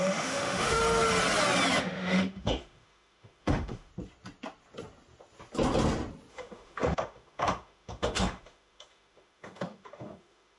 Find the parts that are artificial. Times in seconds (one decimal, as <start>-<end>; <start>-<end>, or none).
0.0-0.8; 1.8-3.9; 6.3-10.6